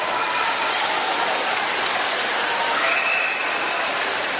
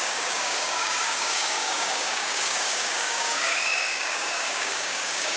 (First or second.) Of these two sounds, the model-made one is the second